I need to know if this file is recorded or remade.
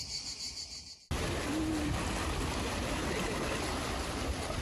recorded